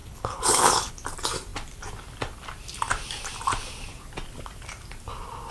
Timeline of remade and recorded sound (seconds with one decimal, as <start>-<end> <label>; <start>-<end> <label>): 0.0-0.9 remade; 0.9-5.5 recorded